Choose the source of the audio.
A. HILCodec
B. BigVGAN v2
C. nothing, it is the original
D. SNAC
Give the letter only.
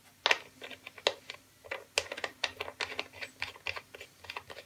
C